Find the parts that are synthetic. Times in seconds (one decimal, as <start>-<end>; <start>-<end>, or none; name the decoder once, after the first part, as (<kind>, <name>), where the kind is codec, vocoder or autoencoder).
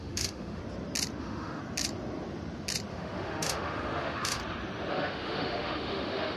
0.0-0.6 (autoencoder, DAC-VAE); 1.2-1.6; 2.9-4.4; 4.9-6.4